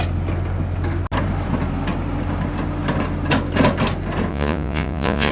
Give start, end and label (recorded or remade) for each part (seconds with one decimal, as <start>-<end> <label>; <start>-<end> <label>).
0.0-4.3 recorded; 4.3-5.3 remade